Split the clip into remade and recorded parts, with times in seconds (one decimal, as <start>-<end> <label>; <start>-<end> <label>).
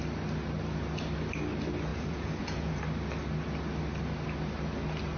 0.0-1.9 recorded; 1.9-2.8 remade; 2.8-5.2 recorded